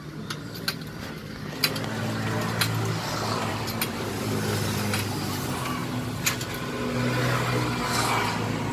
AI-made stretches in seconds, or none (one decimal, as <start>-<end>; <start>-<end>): none

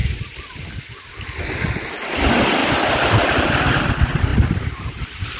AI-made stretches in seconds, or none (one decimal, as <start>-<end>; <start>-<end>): 2.6-3.9; 4.3-4.9

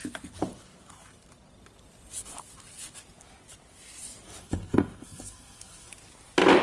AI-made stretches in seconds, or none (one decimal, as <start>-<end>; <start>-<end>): 4.4-5.9